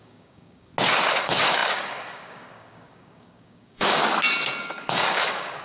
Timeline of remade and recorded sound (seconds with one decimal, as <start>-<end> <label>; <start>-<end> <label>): 0.0-0.7 remade; 0.7-1.2 recorded; 1.2-4.0 remade; 4.0-4.6 recorded; 4.6-5.6 remade